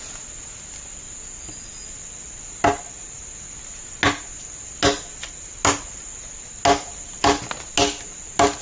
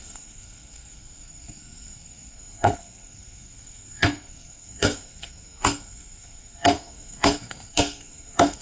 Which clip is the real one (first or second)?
first